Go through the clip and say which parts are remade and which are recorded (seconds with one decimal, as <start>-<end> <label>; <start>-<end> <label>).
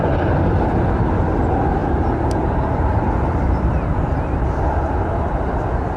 0.0-6.0 recorded